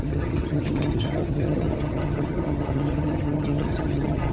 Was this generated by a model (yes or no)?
yes